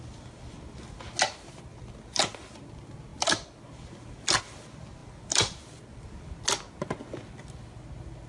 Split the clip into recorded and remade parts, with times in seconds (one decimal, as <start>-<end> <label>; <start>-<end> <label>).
0.0-5.0 recorded; 5.0-6.1 remade; 6.1-8.3 recorded